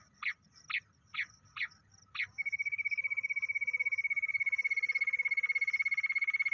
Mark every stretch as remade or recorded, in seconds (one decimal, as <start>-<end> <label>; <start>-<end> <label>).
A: 0.0-0.8 recorded; 0.8-1.8 remade; 1.8-4.3 recorded; 4.3-6.5 remade

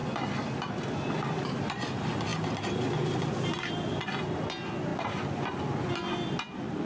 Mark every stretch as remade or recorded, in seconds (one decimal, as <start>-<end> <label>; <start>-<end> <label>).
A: 0.0-6.9 recorded